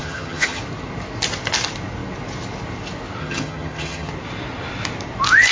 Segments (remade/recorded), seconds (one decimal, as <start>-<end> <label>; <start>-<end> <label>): 0.0-0.6 remade; 0.6-3.2 recorded; 3.2-4.1 remade; 4.1-5.5 recorded